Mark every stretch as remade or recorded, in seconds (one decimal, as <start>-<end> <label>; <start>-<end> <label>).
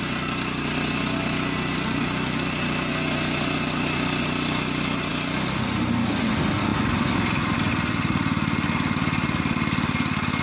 0.0-10.4 recorded